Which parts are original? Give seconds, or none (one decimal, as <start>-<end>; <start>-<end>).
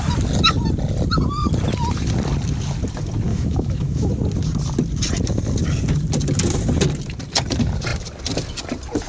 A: 0.0-3.3; 4.1-9.1